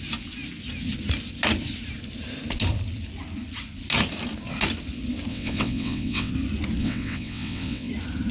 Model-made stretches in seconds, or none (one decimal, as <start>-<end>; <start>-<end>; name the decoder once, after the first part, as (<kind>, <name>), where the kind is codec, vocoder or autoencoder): 5.3-6.3 (vocoder, WaveNeXt); 6.8-7.9